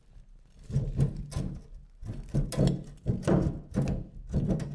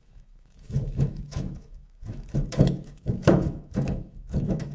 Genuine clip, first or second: first